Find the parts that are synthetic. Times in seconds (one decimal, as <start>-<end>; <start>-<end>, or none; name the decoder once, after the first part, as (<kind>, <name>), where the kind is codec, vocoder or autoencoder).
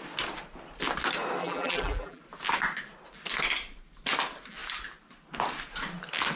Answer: 1.4-2.2 (vocoder, BigVGAN v2)